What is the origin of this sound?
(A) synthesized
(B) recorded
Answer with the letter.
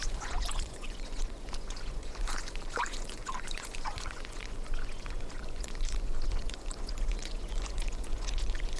A